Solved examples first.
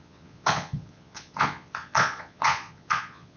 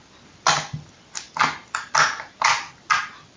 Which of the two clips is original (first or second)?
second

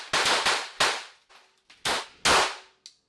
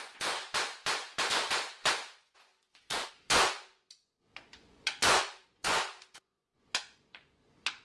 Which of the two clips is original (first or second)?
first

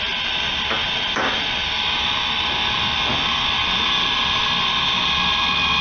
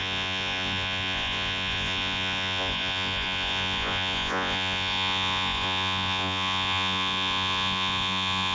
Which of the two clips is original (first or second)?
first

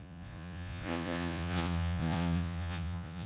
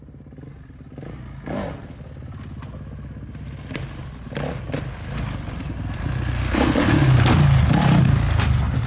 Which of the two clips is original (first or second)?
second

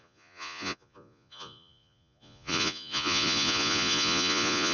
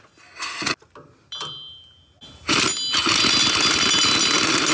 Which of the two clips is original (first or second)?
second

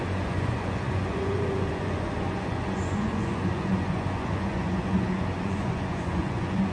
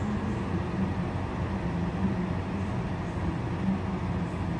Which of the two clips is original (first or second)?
second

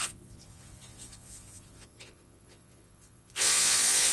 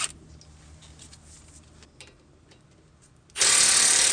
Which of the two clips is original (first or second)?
second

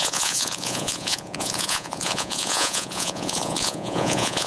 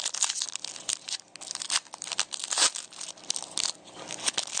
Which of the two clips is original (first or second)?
second